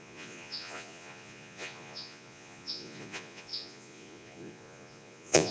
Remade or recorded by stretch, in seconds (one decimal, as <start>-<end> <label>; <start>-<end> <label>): 0.0-5.5 remade